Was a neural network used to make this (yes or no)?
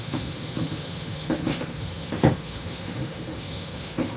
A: yes